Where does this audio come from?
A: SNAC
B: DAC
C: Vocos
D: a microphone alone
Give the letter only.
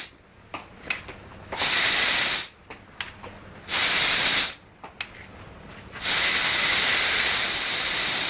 D